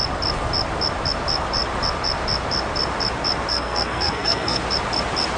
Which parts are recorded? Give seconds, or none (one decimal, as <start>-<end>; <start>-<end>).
0.0-3.5; 4.6-5.4